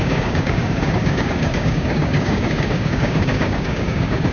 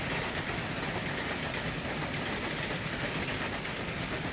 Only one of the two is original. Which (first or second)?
second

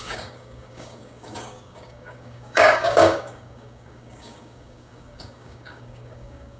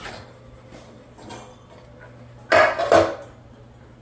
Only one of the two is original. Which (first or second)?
second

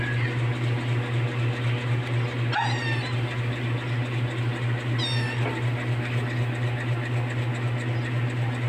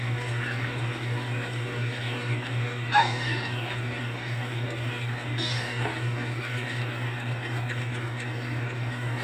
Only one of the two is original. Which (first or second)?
first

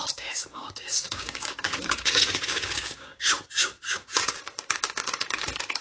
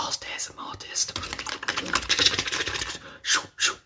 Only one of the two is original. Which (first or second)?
second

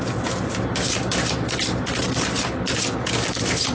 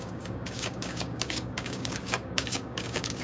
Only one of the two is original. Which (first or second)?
first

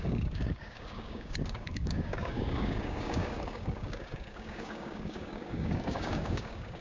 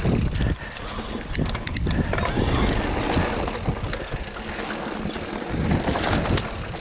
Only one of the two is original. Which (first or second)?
second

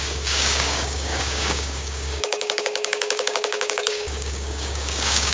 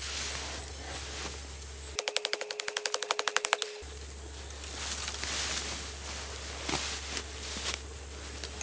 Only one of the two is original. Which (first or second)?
second